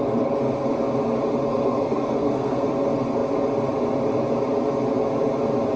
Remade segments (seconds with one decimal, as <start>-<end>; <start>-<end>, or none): 1.5-2.7